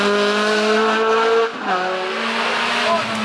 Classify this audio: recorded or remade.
recorded